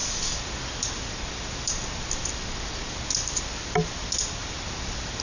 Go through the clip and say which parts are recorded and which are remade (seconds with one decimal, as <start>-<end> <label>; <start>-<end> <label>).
0.0-5.2 recorded